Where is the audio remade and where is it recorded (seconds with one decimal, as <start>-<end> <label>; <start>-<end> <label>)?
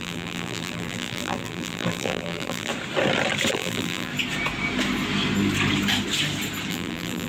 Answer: 0.0-2.7 remade; 2.7-3.5 recorded; 3.5-4.1 remade; 4.1-6.7 recorded; 6.7-7.3 remade